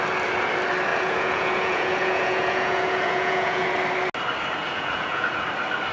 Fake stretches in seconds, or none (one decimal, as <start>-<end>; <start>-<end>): 0.9-3.7; 4.6-5.4